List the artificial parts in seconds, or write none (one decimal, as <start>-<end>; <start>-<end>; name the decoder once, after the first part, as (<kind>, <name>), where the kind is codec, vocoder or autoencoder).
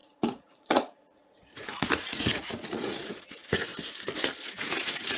0.0-3.7 (vocoder, Vocos); 4.4-5.2